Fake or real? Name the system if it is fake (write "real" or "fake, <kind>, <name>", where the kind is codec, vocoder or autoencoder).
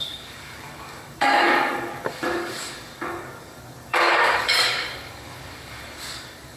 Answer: fake, codec, DAC